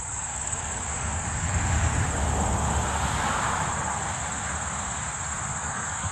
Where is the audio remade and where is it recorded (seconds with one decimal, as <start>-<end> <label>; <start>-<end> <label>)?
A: 0.0-1.9 remade; 1.9-5.6 recorded; 5.6-6.1 remade